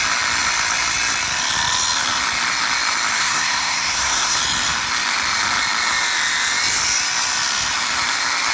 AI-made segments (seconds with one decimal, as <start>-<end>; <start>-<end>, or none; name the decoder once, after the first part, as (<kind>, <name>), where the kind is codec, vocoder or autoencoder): 3.2-4.4 (codec, SNAC)